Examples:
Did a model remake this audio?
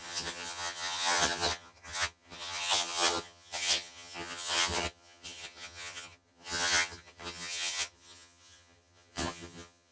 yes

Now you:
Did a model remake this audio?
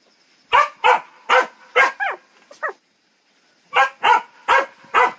no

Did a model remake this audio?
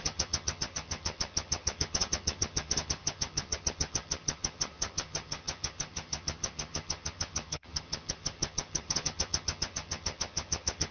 yes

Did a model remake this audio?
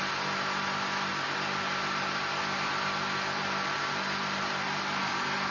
no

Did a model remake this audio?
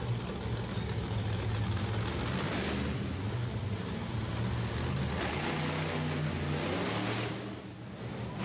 no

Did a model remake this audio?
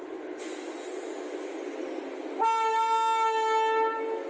no